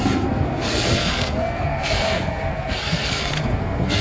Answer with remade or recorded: remade